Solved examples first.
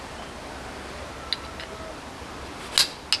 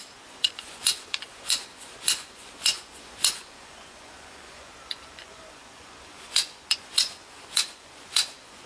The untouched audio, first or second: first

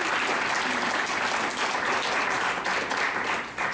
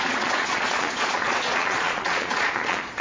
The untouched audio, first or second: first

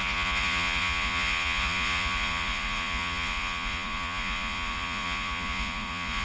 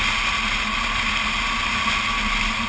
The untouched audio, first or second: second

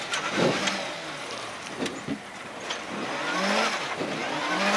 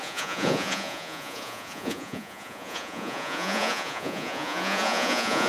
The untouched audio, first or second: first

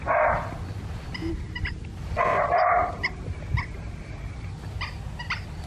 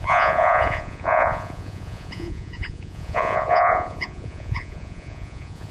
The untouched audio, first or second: first